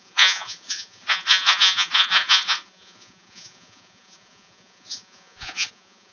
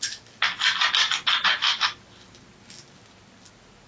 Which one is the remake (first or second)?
first